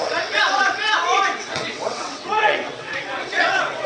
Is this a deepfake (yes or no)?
yes